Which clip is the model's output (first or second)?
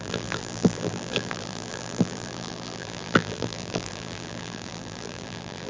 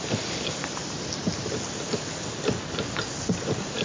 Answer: first